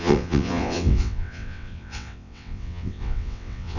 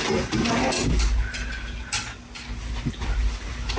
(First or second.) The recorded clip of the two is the second